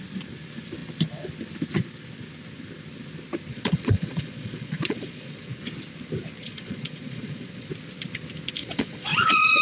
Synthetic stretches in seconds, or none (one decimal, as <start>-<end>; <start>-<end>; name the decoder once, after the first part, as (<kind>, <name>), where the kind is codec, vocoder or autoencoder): 3.5-5.4 (vocoder, Vocos); 6.4-7.7; 8.6-9.6